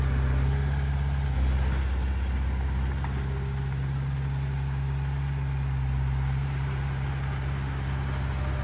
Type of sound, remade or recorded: recorded